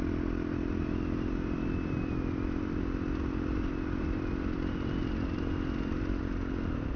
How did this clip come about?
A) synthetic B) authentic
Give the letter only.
B